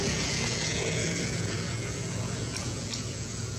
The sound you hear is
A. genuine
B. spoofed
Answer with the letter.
B